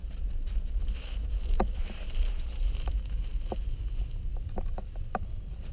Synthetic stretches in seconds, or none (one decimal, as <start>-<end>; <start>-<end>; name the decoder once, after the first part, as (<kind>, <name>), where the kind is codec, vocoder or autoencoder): 0.0-2.9 (vocoder, BigVGAN v2)